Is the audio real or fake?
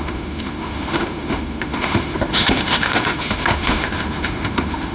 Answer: fake